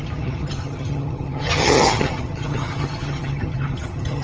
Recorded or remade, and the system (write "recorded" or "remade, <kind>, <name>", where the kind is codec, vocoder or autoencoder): remade, vocoder, HiFi-GAN